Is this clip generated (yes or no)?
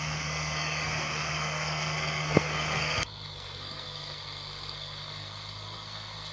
yes